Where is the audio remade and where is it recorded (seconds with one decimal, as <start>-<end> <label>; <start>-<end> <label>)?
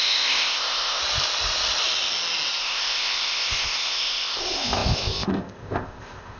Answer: 0.0-1.0 remade; 1.0-2.6 recorded; 2.6-6.4 remade